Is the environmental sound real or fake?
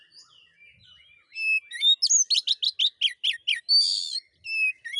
real